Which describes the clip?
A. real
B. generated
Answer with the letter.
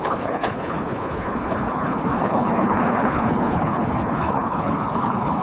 B